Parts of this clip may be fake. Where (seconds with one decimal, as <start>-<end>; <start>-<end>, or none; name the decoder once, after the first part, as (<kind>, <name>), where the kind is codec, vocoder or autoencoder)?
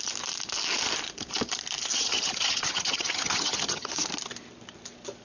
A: 1.9-3.9 (vocoder, HiFi-GAN)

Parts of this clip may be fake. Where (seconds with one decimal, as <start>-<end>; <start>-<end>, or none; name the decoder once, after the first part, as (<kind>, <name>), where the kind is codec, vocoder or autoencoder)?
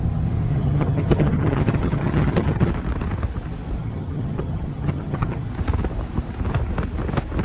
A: 0.5-2.7 (vocoder, HiFi-GAN); 3.8-5.5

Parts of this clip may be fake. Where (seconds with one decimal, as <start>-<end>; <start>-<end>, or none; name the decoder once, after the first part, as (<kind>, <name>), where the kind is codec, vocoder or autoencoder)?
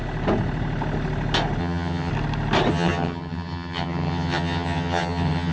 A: 1.6-2.1 (vocoder, HiFi-GAN); 2.7-5.5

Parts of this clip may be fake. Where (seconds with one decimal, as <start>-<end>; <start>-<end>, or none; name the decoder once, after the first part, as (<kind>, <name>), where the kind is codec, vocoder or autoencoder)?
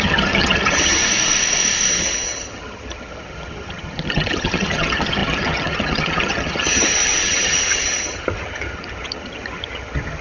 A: 0.0-1.0 (vocoder, HiFi-GAN); 1.9-10.2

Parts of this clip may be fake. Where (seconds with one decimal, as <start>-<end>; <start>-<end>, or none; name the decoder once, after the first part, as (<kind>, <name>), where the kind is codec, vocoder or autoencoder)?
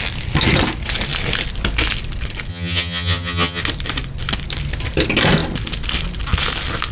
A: 2.5-3.6 (vocoder, HiFi-GAN)